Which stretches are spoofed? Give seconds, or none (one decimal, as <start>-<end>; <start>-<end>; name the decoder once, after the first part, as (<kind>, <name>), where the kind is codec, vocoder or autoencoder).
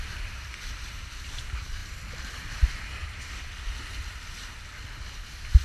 none